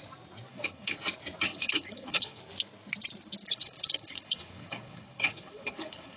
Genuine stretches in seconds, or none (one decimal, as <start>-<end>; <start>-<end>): 0.0-0.5; 1.0-1.5; 2.4-3.4

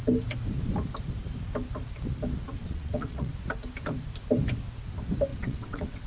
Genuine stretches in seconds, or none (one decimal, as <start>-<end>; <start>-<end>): 0.0-2.6; 3.3-5.3

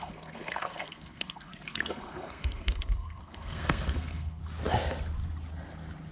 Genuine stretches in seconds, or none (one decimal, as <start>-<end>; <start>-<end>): 4.4-6.1

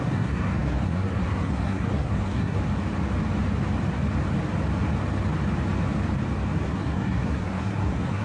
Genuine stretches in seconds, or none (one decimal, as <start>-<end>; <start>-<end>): 2.6-6.6

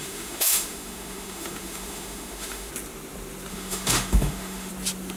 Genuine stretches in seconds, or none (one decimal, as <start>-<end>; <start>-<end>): 2.7-3.5; 4.7-5.2

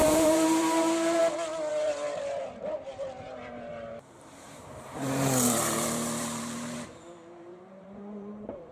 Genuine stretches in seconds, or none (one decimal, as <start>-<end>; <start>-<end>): 1.2-1.7

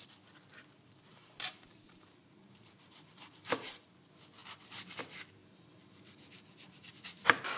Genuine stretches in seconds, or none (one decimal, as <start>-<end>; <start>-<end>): 0.0-1.1; 3.9-5.4; 6.9-7.6

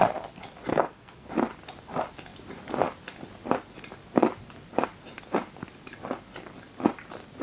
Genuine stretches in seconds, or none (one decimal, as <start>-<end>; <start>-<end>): 0.0-0.7; 1.3-7.4